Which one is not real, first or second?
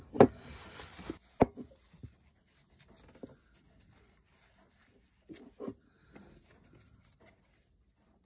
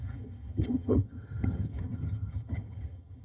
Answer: second